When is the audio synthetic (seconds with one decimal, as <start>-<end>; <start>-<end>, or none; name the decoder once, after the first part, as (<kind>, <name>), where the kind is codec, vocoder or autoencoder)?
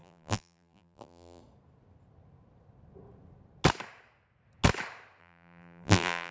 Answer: 0.0-1.4 (vocoder, BigVGAN v2); 5.2-6.3